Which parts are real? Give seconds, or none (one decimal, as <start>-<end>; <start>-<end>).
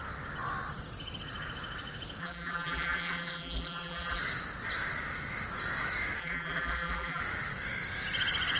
0.0-2.2; 4.2-6.2; 7.2-8.6